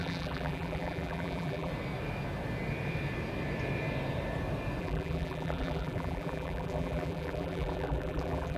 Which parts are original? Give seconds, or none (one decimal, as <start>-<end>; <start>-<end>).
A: 1.7-4.8